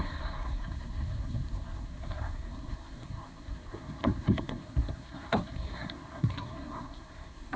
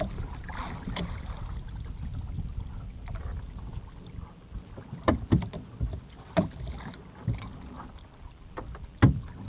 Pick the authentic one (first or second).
second